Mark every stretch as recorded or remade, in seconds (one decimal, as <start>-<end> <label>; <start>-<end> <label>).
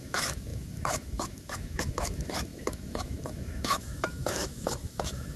0.0-5.4 remade